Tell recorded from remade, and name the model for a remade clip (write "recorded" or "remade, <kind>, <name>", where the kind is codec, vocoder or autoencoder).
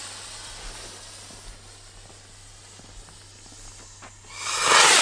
recorded